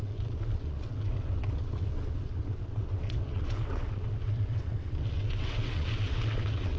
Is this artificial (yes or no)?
yes